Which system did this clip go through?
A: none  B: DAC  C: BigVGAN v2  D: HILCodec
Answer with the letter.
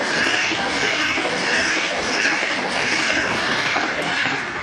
B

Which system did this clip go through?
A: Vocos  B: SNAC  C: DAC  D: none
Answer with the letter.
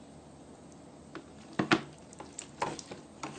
D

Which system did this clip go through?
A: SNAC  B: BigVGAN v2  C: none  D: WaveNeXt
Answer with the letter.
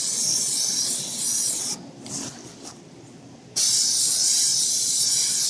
C